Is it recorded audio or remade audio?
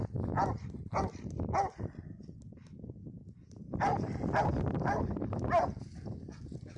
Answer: recorded